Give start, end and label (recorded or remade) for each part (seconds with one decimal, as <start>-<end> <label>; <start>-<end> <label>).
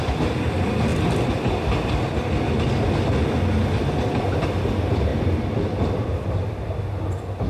0.0-0.9 remade; 0.9-3.8 recorded; 3.8-7.5 remade